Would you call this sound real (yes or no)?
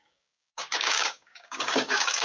no